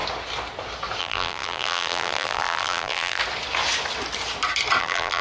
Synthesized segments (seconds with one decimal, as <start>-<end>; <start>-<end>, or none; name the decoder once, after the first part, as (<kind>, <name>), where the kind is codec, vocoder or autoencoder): 1.0-3.2 (vocoder, BigVGAN v2); 4.8-5.2